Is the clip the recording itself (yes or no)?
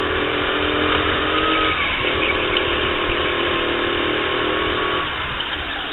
yes